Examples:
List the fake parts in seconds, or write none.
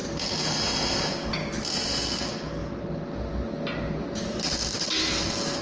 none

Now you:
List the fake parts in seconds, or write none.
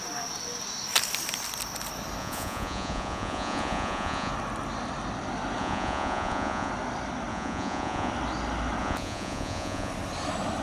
2.2-4.3 (vocoder, Vocos); 5.6-6.7; 7.3-8.1; 8.8-9.9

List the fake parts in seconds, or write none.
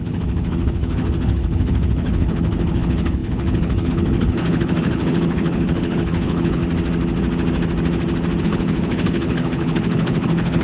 0.0-6.6 (codec, HILCodec); 8.4-10.6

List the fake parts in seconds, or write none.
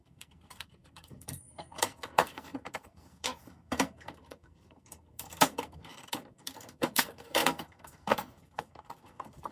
0.0-9.5 (codec, SNAC)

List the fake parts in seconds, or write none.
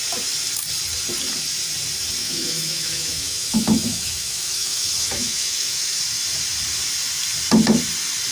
2.2-6.0 (autoencoder, DAC-VAE)